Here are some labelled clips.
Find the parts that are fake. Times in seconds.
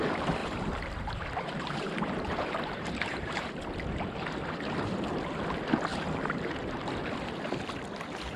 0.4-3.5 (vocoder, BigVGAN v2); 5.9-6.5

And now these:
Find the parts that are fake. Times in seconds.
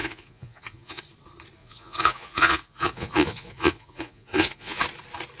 0.0-1.0 (vocoder, Vocos); 1.6-4.8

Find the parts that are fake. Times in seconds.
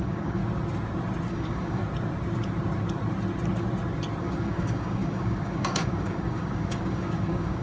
0.0-0.4 (codec, DAC); 1.3-1.8; 4.2-7.6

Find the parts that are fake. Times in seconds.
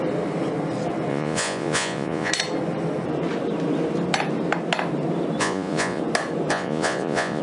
1.1-2.3 (vocoder, Vocos); 5.4-6.0; 6.5-7.4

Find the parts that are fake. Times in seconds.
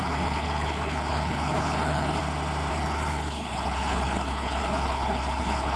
0.0-2.2 (codec, HILCodec); 2.7-5.8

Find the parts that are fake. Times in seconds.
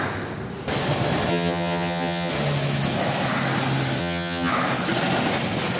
1.3-2.3 (vocoder, HiFi-GAN); 4.0-4.5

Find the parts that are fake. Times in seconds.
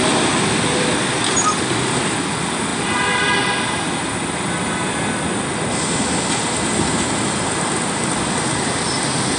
0.0-2.7 (vocoder, BigVGAN v2); 7.9-9.4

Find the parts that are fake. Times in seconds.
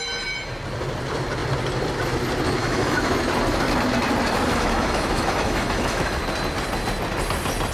2.6-3.1 (autoencoder, DAC-VAE); 4.5-6.2